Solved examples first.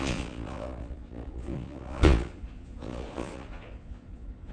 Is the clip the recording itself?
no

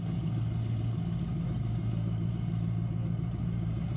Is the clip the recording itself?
yes